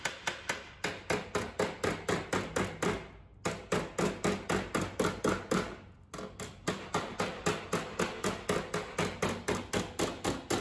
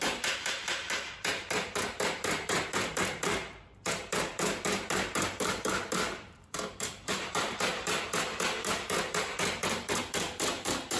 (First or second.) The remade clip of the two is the second